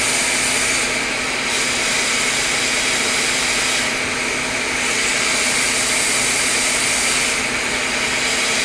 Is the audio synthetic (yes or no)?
no